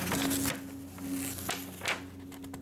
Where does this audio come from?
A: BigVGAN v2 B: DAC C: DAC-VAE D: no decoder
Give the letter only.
D